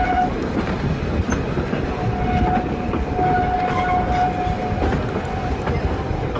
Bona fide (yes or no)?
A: yes